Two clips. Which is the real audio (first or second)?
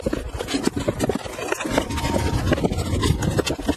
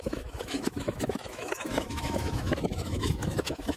first